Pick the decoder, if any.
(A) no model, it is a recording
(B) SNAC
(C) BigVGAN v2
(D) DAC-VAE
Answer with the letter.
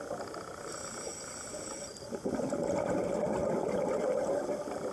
A